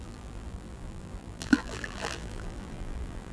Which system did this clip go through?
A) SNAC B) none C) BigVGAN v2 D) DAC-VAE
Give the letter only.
C